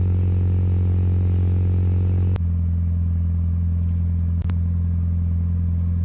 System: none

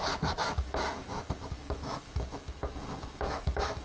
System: autoencoder, DAC-VAE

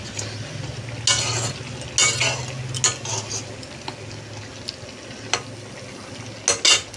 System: none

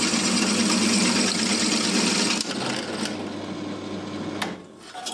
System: none